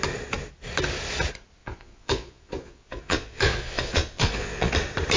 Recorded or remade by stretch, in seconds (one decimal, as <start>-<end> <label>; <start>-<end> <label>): 0.0-1.6 recorded; 1.6-4.7 remade; 4.7-5.2 recorded